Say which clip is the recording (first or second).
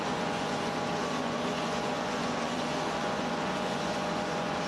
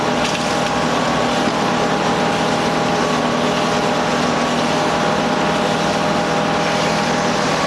second